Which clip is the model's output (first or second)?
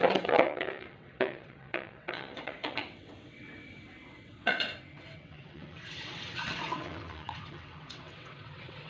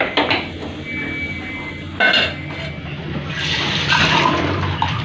first